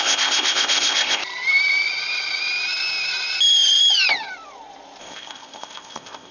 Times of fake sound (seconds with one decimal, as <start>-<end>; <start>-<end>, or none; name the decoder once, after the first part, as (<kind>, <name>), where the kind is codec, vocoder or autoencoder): 0.0-1.2 (codec, ZipCodec); 5.0-6.3

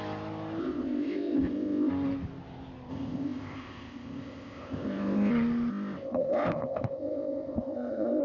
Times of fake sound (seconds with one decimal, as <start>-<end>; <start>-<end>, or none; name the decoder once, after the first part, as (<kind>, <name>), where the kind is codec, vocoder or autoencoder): 0.6-1.9 (codec, ZipCodec); 2.9-5.3; 5.7-8.2

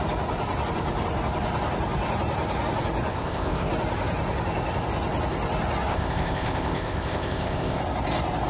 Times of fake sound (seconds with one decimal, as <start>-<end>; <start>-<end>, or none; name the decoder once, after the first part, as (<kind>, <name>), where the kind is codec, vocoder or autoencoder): 3.1-3.7 (codec, ZipCodec); 5.9-7.8

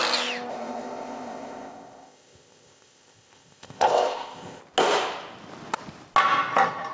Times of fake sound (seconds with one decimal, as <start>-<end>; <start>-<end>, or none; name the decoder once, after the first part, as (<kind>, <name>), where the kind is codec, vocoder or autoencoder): 0.5-4.6 (codec, ZipCodec)